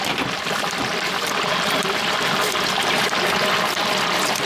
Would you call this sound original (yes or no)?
no